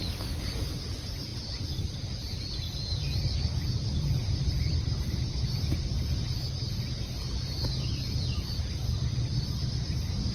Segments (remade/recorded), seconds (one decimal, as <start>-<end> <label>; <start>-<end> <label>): 0.0-1.3 recorded; 1.3-6.2 remade; 6.2-10.3 recorded